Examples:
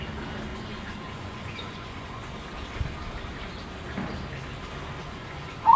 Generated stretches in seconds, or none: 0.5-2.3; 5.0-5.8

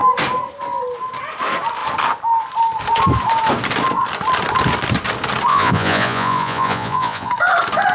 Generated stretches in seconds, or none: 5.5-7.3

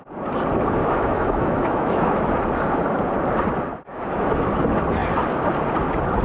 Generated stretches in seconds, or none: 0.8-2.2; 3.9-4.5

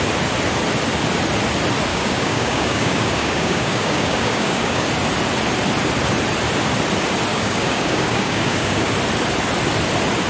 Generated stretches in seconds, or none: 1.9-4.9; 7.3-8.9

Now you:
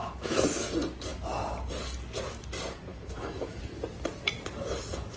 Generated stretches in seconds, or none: 0.0-0.7; 2.9-3.6